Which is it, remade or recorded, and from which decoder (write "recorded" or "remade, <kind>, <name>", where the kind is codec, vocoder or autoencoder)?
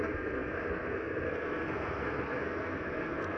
remade, codec, SNAC